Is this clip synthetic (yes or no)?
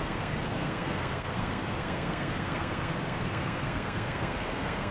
yes